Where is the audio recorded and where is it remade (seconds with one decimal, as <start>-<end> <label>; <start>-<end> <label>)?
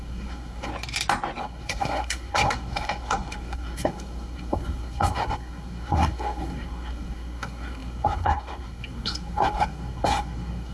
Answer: 0.0-0.7 remade; 0.7-1.4 recorded; 1.4-10.7 remade